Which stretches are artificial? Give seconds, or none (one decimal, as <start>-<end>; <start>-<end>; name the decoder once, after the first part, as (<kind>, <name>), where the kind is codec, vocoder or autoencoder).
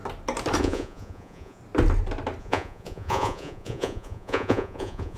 0.6-1.6 (vocoder, Vocos); 2.4-5.2